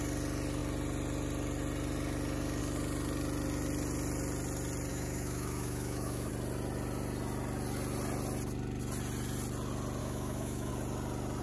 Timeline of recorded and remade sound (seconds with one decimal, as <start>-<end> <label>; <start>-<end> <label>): 0.0-4.9 recorded; 4.9-6.3 remade; 6.3-10.0 recorded; 10.0-10.7 remade; 10.7-11.4 recorded